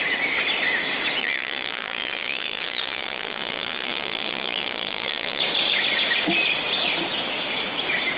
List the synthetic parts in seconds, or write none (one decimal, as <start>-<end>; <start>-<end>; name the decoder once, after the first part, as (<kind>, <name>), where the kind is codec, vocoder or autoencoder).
1.2-5.4 (vocoder, Vocos)